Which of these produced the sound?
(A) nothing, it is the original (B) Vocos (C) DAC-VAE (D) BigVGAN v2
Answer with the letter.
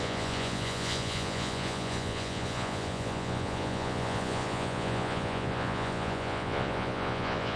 B